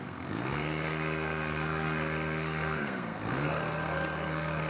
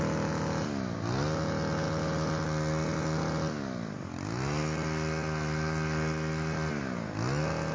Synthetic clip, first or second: first